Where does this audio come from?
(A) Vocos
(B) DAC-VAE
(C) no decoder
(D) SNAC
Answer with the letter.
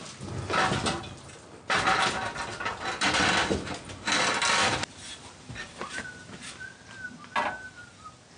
C